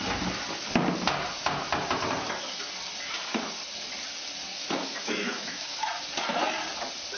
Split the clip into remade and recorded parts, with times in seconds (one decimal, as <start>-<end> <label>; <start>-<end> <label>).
0.0-4.5 recorded; 4.5-5.8 remade; 5.8-7.2 recorded